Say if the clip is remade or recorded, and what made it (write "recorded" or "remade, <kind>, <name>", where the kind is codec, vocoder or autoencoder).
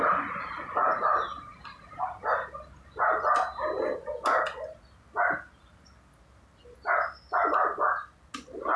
recorded